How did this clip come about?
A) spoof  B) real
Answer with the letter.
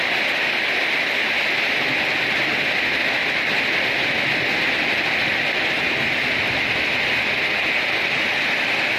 B